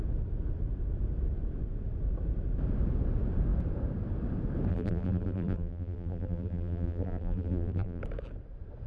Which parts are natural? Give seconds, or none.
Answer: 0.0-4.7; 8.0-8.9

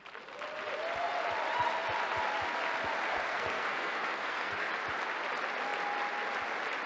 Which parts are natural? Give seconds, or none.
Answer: 0.0-3.1; 4.7-6.9

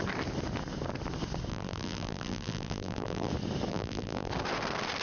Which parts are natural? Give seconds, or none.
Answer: 0.0-1.5; 3.3-3.7; 4.3-5.0

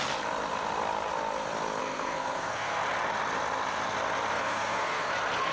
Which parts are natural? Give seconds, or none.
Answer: 0.0-1.8; 2.8-4.3; 5.1-5.5

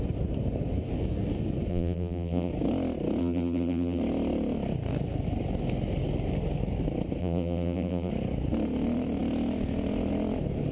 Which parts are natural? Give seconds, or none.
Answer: 0.0-1.7; 2.5-3.2; 4.0-7.2; 8.1-10.7

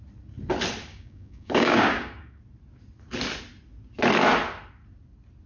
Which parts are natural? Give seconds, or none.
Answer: 0.0-0.9; 2.4-5.5